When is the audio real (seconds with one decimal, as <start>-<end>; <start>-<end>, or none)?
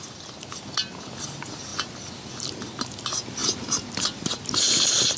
0.0-5.2